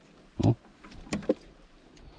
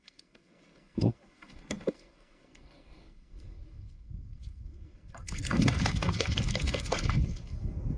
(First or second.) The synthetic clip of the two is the second